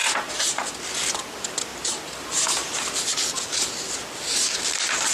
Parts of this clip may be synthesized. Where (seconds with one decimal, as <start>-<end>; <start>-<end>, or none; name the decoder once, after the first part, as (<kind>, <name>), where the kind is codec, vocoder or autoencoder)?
none